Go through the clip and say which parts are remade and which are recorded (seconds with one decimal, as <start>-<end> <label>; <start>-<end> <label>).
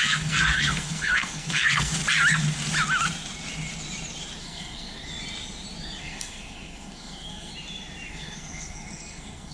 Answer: 0.0-2.0 remade; 2.0-4.4 recorded; 4.4-5.0 remade; 5.0-6.0 recorded; 6.0-7.5 remade; 7.5-8.1 recorded; 8.1-9.5 remade